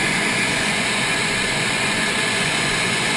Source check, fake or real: fake